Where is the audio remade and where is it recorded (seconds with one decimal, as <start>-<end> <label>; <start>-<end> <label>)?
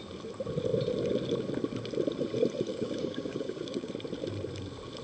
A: 0.0-2.7 recorded; 2.7-3.9 remade; 3.9-5.0 recorded